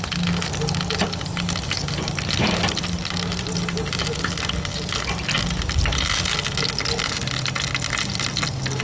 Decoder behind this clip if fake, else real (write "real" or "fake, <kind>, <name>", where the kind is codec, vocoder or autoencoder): real